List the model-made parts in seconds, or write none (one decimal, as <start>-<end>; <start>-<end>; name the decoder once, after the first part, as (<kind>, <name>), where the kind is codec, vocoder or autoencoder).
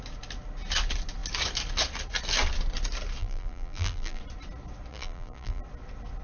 3.2-4.2 (vocoder, BigVGAN v2); 4.9-5.6